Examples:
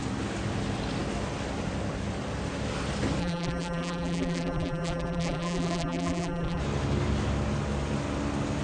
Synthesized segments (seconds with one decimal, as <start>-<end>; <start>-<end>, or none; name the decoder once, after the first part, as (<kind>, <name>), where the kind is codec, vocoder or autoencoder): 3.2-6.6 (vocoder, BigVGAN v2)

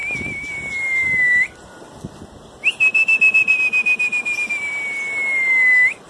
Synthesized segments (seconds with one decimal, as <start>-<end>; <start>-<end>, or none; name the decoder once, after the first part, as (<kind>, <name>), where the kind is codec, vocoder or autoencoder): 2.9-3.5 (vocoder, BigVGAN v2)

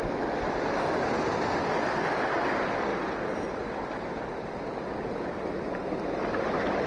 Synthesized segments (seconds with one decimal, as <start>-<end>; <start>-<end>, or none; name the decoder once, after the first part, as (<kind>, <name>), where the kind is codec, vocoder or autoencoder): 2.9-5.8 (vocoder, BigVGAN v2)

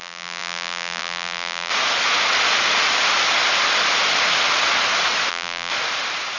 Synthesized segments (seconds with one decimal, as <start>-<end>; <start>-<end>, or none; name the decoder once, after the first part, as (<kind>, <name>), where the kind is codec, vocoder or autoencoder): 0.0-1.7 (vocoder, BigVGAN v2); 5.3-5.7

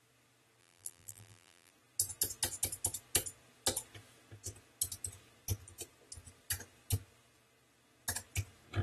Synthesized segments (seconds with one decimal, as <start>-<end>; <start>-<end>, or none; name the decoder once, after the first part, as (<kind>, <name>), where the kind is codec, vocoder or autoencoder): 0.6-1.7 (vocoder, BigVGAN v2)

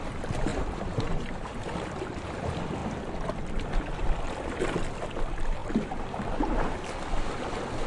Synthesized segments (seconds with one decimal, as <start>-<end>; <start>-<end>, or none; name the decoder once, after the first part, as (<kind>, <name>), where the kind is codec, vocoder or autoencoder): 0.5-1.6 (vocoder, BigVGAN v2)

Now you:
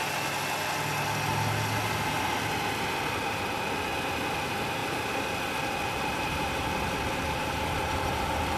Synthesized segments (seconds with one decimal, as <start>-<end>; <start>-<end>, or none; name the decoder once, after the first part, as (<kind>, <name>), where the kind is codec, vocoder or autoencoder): 4.8-5.3 (vocoder, BigVGAN v2)